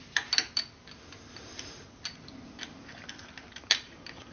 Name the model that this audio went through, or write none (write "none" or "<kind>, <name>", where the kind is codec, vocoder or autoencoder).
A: none